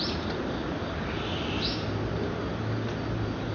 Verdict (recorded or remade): recorded